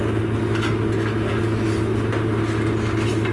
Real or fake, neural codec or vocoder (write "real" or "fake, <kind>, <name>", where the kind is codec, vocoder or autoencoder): real